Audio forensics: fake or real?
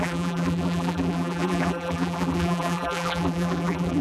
fake